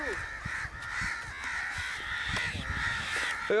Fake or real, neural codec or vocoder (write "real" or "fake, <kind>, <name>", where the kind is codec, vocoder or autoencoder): real